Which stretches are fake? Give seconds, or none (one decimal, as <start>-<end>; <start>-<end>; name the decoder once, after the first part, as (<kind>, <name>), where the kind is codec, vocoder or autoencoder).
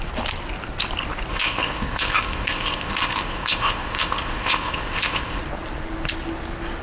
1.3-5.4 (codec, ZipCodec)